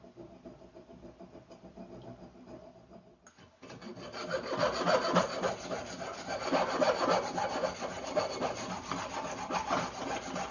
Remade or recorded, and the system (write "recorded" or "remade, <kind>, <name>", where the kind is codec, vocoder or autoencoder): recorded